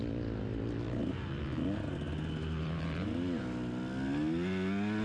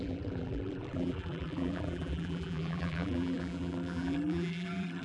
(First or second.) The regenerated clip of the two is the second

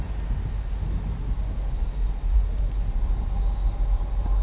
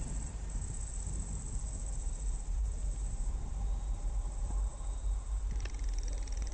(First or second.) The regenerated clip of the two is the second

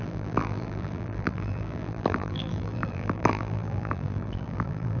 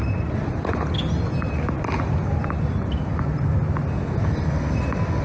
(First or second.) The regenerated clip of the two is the first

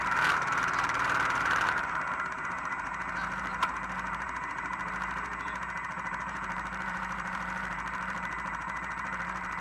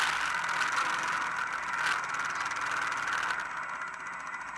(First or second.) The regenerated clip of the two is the first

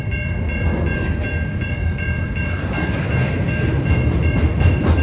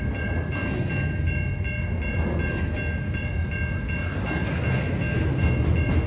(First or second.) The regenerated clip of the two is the first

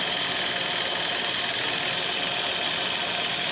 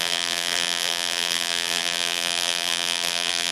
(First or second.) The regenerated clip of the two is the second